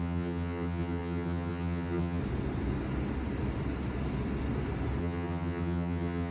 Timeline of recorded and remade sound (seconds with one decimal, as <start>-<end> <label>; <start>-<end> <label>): 0.0-2.2 remade; 2.2-5.0 recorded; 5.0-6.3 remade